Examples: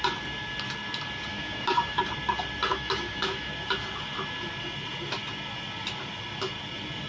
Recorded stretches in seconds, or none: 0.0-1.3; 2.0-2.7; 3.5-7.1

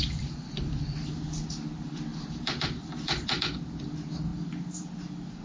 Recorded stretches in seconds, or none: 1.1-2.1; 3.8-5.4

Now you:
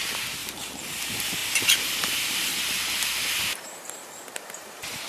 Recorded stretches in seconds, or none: 1.4-2.0; 2.5-3.3

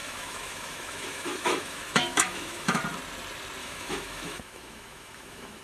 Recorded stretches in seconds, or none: 2.8-3.6

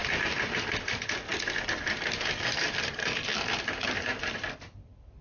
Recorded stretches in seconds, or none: 0.0-0.8; 3.3-4.0

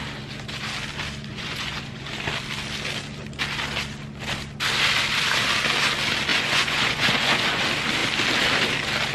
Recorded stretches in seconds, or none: 0.0-1.3; 2.1-6.3; 7.6-9.1

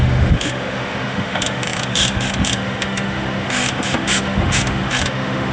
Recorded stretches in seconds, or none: none